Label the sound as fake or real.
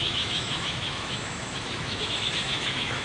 fake